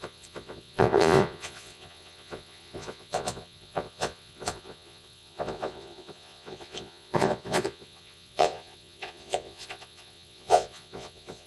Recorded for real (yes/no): no